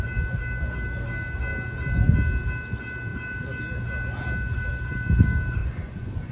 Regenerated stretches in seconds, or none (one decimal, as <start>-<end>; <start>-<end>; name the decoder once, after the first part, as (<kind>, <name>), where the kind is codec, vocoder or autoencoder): 5.6-6.3 (vocoder, Vocos)